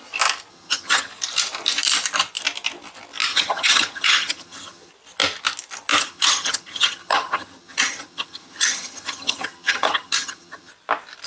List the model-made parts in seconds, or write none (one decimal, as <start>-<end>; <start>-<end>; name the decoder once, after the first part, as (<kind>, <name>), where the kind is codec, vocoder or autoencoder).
0.5-1.1 (vocoder, HiFi-GAN); 3.3-4.9; 6.0-10.7